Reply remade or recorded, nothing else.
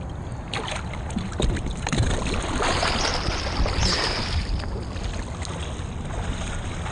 recorded